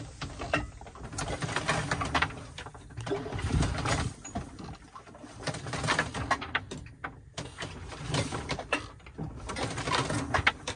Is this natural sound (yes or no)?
yes